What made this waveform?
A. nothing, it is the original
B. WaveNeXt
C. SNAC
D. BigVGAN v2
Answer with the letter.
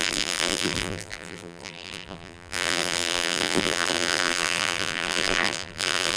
D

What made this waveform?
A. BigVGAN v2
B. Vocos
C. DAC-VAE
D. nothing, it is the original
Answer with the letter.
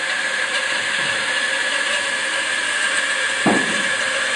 A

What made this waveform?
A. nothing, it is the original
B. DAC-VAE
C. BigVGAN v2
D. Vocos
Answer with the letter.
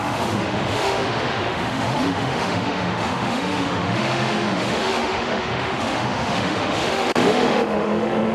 B